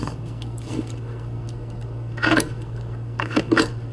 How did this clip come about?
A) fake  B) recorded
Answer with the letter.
A